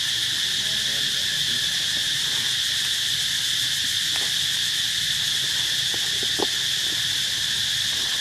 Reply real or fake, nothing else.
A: real